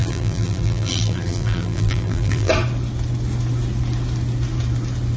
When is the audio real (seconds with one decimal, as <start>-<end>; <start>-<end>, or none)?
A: 2.5-5.2